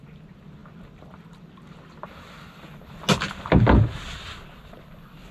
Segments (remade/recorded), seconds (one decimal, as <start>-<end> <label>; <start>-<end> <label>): 0.0-5.3 recorded

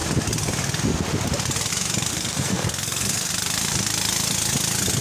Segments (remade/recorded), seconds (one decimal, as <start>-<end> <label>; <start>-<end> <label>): 0.0-2.1 recorded; 2.1-3.3 remade; 3.3-5.0 recorded

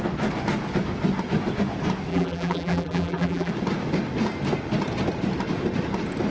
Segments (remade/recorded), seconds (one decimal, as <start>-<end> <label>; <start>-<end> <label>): 0.0-2.1 recorded; 2.1-3.5 remade; 3.5-6.3 recorded

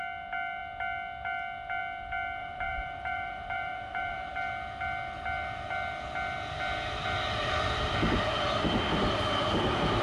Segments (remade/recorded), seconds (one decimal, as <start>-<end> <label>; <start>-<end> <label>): 0.0-2.4 recorded; 2.4-4.3 remade; 4.3-10.0 recorded

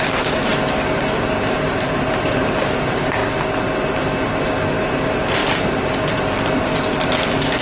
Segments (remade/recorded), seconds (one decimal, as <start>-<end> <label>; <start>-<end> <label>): 0.0-0.5 remade; 0.5-1.5 recorded; 1.5-3.2 remade; 3.2-4.8 recorded; 4.8-5.4 remade; 5.4-6.6 recorded; 6.6-7.6 remade

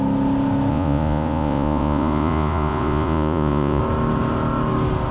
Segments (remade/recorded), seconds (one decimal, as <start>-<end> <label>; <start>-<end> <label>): 0.0-0.7 recorded; 0.7-3.8 remade; 3.8-5.1 recorded

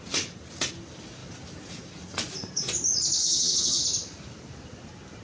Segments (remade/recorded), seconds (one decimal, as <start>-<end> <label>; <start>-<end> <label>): 0.0-3.2 recorded; 3.2-3.8 remade; 3.8-5.2 recorded

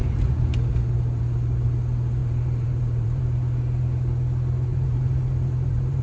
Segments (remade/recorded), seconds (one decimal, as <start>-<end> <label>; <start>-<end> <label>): 0.0-2.2 recorded; 2.2-3.2 remade; 3.2-4.7 recorded; 4.7-6.0 remade